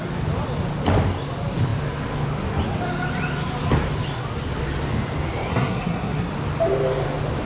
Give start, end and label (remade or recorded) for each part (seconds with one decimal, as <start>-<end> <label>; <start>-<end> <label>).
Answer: 0.0-5.5 recorded; 5.5-6.3 remade; 6.3-7.5 recorded